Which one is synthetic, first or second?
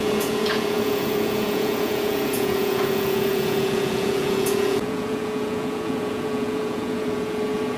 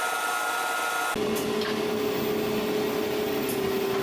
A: first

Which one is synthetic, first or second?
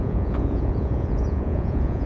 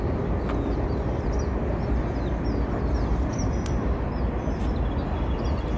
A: first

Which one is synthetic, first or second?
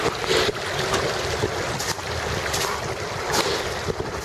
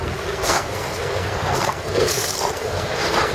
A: second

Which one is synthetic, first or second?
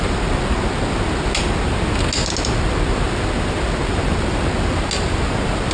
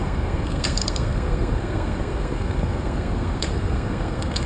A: second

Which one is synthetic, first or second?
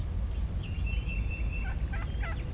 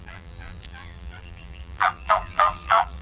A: second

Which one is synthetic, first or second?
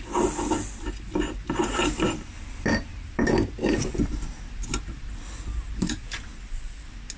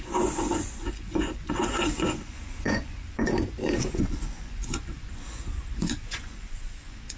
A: second